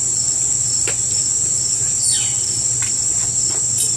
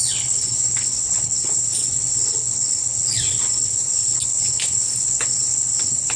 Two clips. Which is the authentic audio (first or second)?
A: first